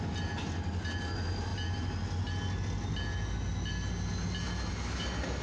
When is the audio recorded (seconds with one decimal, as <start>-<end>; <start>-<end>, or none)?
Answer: 0.0-5.4